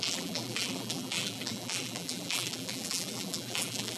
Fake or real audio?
fake